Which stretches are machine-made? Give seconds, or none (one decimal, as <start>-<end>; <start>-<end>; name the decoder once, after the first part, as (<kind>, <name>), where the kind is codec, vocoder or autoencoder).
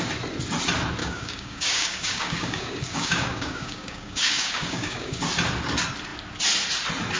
1.0-5.2 (codec, DAC)